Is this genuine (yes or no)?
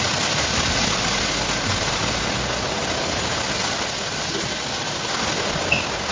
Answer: yes